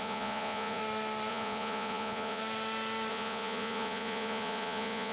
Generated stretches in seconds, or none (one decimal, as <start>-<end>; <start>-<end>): 0.0-0.8; 1.3-2.4; 3.1-5.1